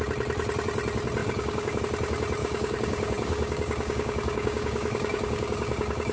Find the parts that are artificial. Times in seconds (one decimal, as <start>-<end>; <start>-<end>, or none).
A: 1.2-1.8; 2.4-6.1